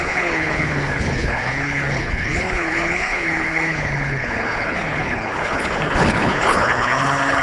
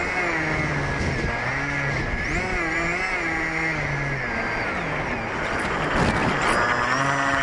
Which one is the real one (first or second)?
second